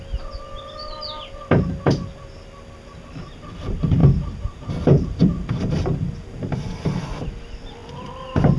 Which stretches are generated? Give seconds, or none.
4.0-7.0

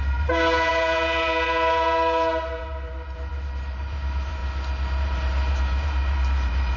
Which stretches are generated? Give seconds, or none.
0.0-4.4; 5.0-6.8

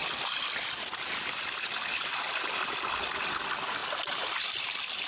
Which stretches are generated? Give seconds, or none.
0.0-3.1; 3.8-4.6

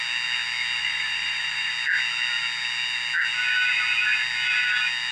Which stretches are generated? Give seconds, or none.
0.8-1.7

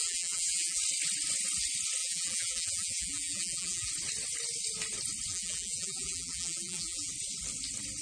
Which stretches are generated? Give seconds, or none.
0.0-0.8; 2.0-3.9; 5.3-7.1